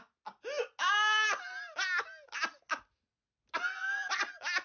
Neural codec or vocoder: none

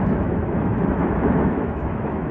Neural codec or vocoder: autoencoder, DAC-VAE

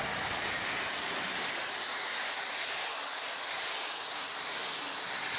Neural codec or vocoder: none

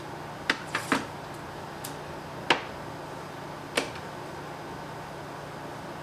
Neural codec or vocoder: none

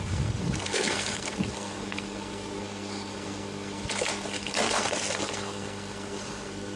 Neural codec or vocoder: codec, SNAC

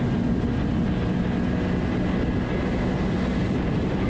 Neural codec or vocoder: none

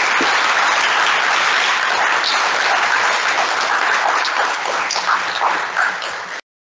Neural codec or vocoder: none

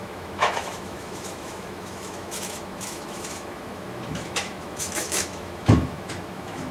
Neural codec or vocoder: autoencoder, DAC-VAE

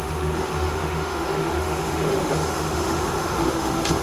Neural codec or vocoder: autoencoder, DAC-VAE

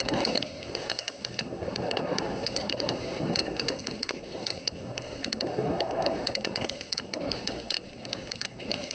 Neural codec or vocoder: codec, SNAC